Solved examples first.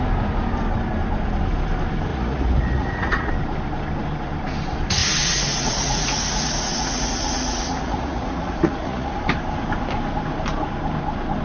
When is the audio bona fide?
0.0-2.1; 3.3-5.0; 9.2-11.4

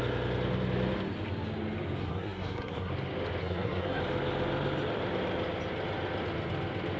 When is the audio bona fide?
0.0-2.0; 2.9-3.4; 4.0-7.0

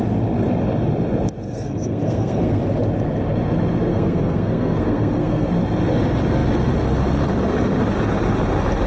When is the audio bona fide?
0.0-1.4; 2.6-3.9; 5.5-8.9

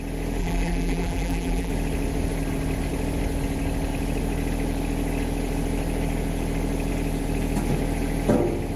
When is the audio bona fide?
0.0-0.4; 1.7-8.8